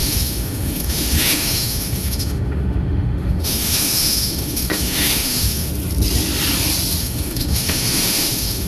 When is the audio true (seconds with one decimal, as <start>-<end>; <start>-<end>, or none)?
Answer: 5.7-7.0